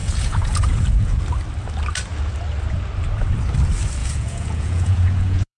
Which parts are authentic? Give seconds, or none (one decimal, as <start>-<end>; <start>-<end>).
1.2-4.0

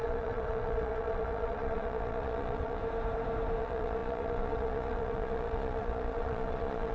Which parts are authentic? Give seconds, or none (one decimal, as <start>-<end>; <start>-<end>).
2.8-3.6